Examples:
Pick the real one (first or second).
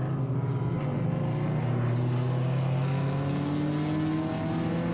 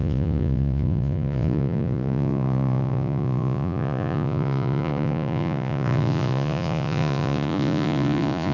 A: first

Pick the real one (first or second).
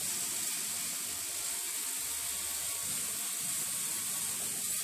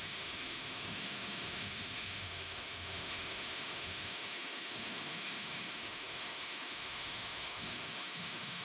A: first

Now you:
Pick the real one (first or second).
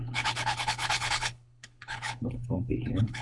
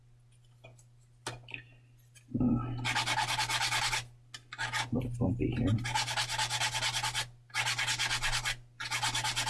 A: second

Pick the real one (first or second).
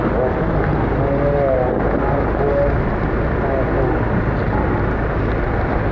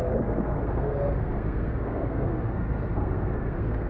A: first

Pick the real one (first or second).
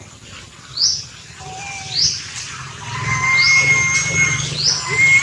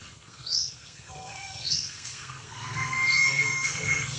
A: first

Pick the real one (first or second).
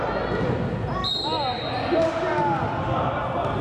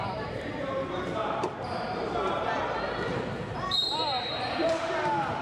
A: first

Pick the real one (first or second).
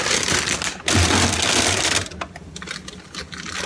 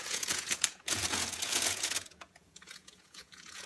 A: first